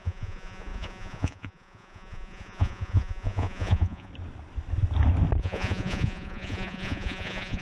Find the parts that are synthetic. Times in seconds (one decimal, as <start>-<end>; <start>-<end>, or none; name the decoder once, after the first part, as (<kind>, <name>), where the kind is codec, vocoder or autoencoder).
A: 0.0-4.1 (vocoder, Vocos); 5.4-7.6